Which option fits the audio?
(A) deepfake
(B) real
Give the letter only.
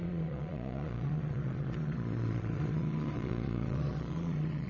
A